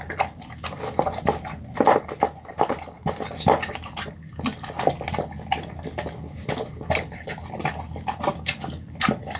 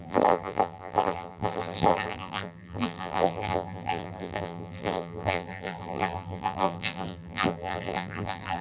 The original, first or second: first